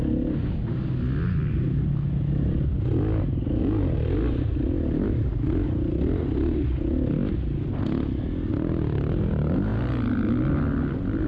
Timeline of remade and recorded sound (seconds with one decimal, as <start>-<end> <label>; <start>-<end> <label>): 0.0-11.3 recorded